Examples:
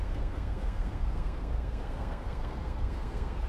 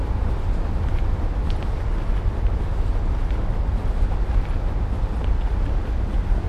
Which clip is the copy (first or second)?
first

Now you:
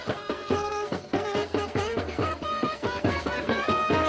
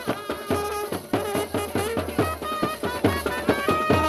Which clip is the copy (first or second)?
first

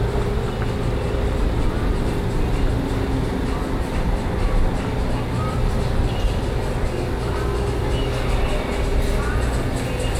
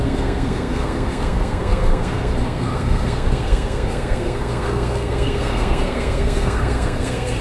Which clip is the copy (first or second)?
second